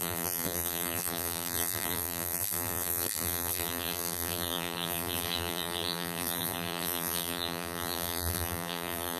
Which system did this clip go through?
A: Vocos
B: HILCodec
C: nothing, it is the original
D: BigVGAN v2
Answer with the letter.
D